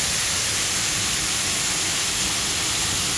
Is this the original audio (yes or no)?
yes